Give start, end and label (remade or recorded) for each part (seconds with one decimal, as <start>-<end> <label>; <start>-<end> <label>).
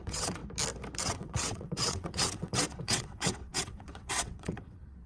0.0-0.4 remade; 0.4-1.0 recorded; 1.0-5.1 remade